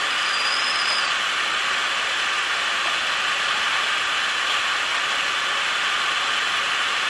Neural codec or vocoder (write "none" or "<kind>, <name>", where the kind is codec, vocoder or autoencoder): none